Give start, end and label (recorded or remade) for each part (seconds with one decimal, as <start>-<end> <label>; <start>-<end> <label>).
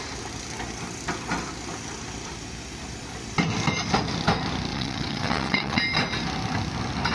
0.0-4.7 recorded; 4.7-5.8 remade; 5.8-7.1 recorded